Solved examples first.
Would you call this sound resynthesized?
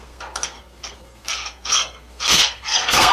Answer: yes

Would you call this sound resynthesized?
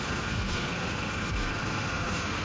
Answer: yes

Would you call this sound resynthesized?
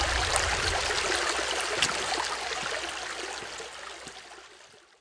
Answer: no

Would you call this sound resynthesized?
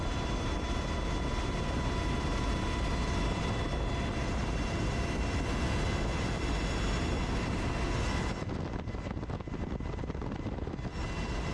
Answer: no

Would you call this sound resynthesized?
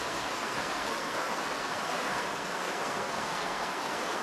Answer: yes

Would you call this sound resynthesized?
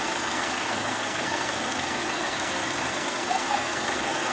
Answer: yes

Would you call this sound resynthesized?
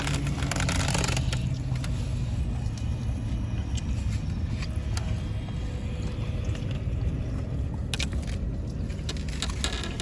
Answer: no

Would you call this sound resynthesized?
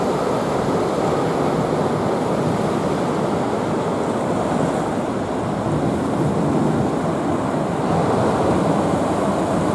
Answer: no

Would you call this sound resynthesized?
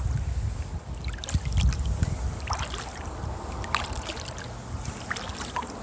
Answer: no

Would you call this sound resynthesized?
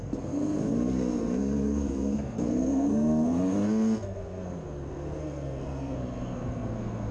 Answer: yes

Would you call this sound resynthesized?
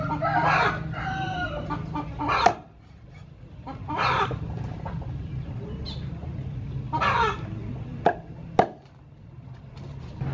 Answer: no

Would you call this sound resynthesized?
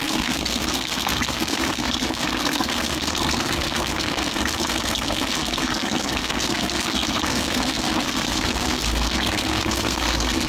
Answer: yes